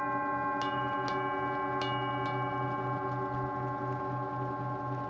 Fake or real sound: real